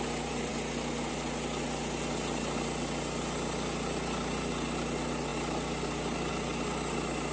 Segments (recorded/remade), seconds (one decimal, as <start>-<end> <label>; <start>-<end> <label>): 0.0-7.3 recorded